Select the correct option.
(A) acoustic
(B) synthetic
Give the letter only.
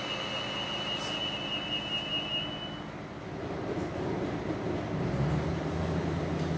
A